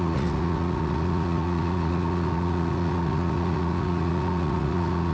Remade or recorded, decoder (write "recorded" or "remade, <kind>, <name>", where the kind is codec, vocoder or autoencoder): remade, vocoder, Vocos